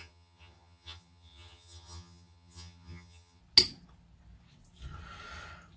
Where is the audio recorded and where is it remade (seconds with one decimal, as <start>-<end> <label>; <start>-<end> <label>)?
0.0-3.4 remade; 3.4-5.8 recorded